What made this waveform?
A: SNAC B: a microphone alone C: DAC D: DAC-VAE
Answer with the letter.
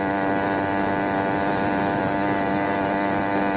B